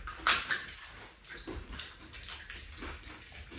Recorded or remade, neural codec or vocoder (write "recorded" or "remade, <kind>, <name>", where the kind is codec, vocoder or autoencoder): recorded